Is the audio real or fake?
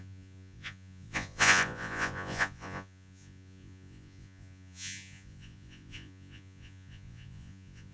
fake